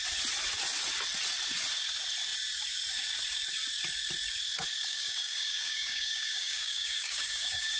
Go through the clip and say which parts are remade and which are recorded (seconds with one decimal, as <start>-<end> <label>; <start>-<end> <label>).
0.0-4.8 recorded; 4.8-7.8 remade